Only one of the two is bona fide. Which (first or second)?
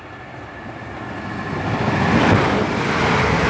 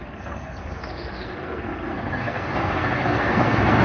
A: first